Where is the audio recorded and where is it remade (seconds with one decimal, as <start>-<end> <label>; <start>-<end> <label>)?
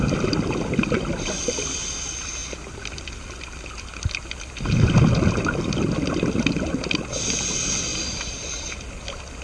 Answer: 0.0-9.4 recorded